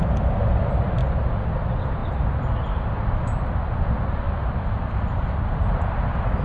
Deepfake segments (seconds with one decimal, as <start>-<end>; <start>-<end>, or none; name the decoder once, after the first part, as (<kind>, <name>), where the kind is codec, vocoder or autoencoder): none